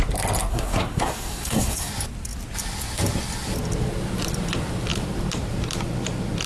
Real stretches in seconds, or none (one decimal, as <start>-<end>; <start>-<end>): 0.0-0.5; 1.9-6.5